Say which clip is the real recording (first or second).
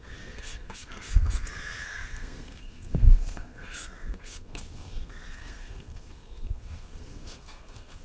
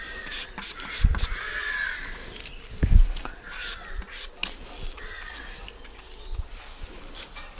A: second